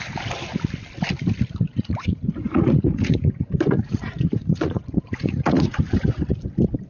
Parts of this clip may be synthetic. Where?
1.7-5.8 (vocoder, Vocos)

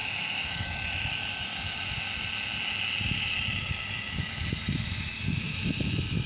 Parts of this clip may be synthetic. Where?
0.0-6.3 (autoencoder, DAC-VAE)